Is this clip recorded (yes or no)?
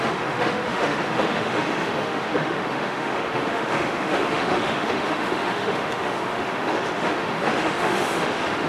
no